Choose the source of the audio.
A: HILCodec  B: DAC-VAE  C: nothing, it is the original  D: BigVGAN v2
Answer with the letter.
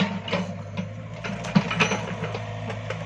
C